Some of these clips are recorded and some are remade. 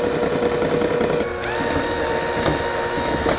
recorded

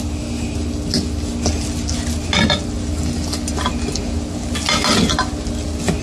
recorded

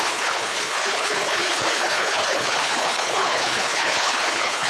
remade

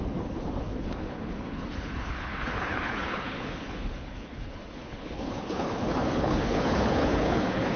remade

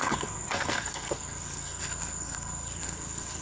remade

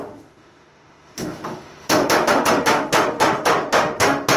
remade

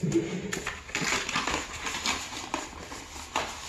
recorded